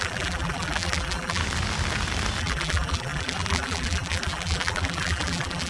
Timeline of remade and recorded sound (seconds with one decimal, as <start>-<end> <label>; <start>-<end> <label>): 0.0-1.4 remade; 1.4-2.4 recorded; 2.4-5.7 remade